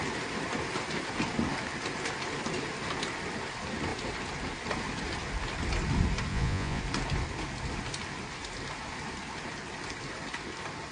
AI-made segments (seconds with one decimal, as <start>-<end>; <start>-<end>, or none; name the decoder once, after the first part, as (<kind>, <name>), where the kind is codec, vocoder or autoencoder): 6.3-6.8 (vocoder, Vocos)